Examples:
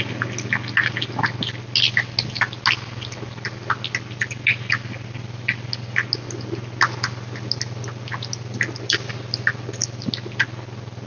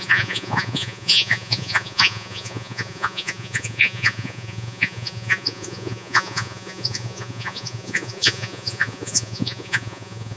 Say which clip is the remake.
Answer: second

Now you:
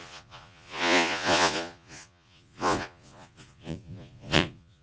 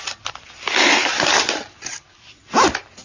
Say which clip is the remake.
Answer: first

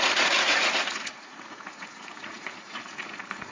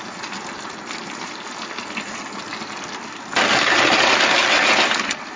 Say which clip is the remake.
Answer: first